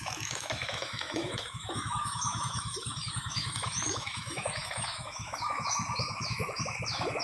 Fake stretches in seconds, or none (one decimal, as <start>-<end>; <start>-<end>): 0.0-7.2

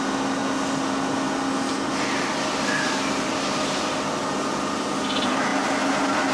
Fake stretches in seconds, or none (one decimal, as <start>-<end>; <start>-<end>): none

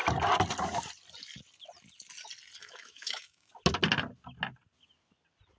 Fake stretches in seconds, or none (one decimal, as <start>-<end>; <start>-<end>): 2.6-3.5

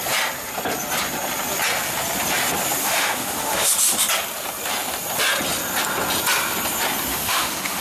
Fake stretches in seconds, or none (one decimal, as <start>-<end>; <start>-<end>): 2.8-3.7; 7.1-7.8

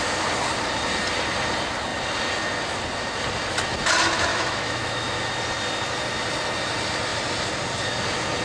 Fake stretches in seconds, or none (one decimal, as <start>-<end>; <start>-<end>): 4.3-5.3

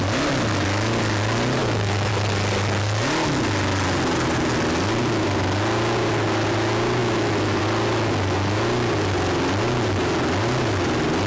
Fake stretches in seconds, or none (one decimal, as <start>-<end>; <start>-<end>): 1.6-2.1; 7.0-7.6